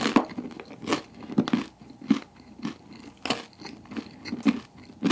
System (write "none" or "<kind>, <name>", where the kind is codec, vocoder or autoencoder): none